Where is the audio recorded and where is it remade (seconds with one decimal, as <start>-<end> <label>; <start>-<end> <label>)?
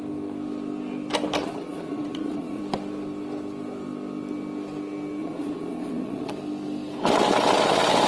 0.0-1.4 recorded; 1.4-2.6 remade; 2.6-5.2 recorded; 5.2-6.3 remade; 6.3-8.1 recorded